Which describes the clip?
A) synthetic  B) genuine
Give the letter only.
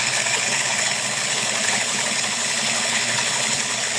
A